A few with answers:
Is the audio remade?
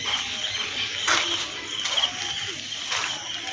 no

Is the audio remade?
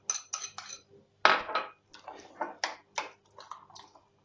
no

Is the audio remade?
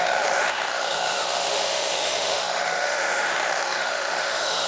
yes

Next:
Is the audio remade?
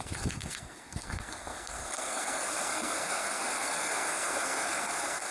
yes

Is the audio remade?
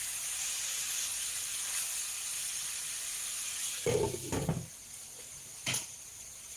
no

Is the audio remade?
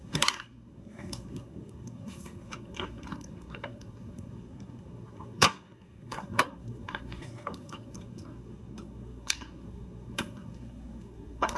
yes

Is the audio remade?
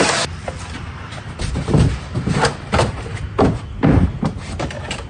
yes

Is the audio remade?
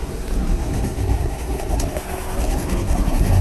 yes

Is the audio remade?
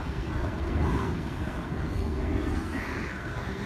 yes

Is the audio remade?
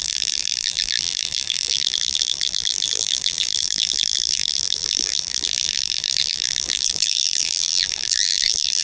yes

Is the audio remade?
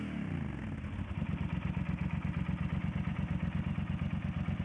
no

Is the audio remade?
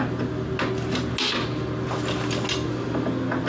no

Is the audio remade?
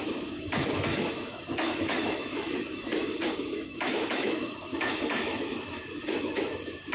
yes